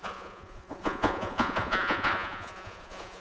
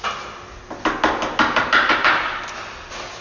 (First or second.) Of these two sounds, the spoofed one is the first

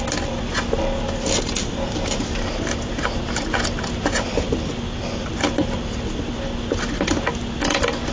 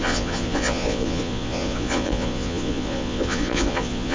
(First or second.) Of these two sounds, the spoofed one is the second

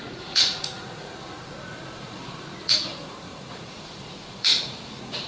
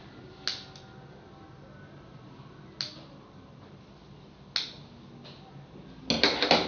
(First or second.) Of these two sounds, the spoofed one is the first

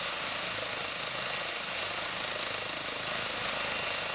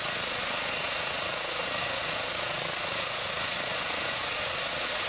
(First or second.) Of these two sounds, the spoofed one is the second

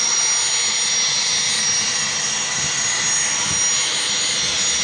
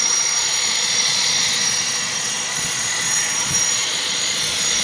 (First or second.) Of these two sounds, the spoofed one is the second